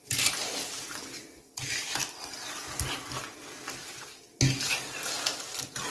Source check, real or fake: real